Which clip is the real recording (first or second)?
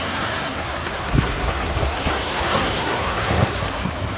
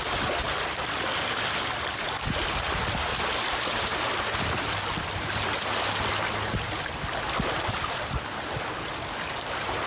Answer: second